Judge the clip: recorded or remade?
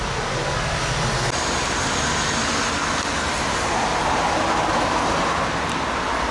recorded